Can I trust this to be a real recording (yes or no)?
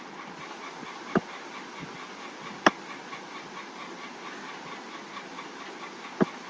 yes